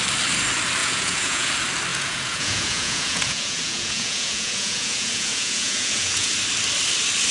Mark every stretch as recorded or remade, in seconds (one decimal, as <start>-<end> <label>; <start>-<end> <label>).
0.0-0.8 recorded; 0.8-1.5 remade; 1.5-1.9 recorded; 1.9-6.3 remade; 6.3-7.3 recorded